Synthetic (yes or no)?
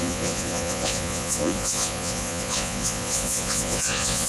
yes